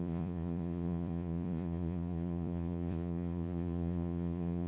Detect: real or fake fake